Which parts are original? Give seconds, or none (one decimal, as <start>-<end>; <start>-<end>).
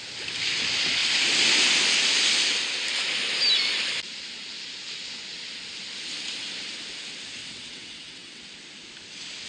0.0-7.4; 8.4-9.5